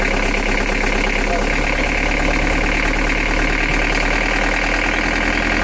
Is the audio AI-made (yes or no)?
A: no